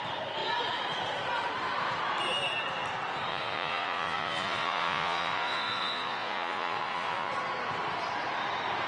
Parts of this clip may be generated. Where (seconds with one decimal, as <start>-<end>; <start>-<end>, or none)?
3.3-7.3